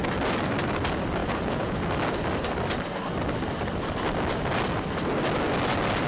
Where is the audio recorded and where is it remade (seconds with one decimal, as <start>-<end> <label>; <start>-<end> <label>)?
0.0-1.2 recorded; 1.2-1.9 remade; 1.9-6.1 recorded